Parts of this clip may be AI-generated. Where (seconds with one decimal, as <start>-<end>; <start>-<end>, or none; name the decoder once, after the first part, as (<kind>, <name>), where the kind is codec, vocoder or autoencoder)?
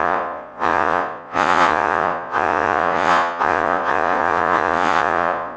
0.0-5.6 (vocoder, Vocos)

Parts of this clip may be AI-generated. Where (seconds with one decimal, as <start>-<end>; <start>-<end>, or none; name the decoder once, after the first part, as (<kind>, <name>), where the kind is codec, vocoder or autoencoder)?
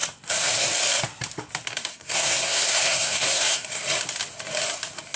1.9-3.8 (codec, SNAC)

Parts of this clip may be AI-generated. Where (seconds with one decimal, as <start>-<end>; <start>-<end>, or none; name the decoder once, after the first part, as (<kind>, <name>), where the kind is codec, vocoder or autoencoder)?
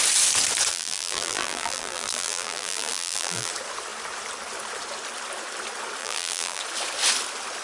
0.7-3.5 (vocoder, BigVGAN v2); 6.0-6.6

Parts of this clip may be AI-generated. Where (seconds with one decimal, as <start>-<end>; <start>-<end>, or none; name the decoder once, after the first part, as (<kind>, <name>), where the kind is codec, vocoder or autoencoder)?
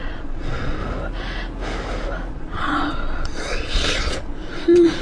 0.0-0.8 (vocoder, Vocos); 2.3-5.0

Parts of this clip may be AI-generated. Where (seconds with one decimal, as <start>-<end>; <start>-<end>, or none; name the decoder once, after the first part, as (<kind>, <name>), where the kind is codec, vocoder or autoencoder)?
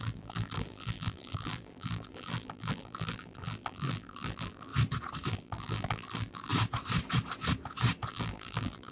0.0-4.7 (vocoder, BigVGAN v2); 5.3-6.5; 8.1-8.9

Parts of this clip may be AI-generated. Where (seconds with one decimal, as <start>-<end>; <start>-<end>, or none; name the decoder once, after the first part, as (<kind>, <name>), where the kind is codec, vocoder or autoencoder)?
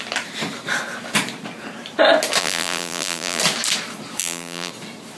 2.4-3.4 (vocoder, BigVGAN v2); 4.2-4.7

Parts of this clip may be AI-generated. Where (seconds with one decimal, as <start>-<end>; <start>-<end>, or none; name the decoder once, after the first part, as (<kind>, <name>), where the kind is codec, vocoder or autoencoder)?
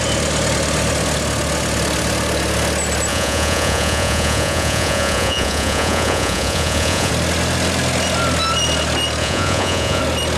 3.1-7.1 (vocoder, Vocos); 9.2-10.0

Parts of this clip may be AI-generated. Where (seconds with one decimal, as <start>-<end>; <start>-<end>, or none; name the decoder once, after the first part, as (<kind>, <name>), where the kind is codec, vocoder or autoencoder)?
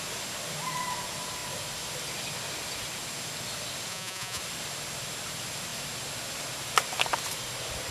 3.9-4.4 (vocoder, Vocos)